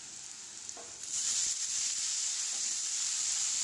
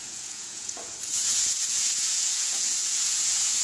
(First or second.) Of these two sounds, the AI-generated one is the second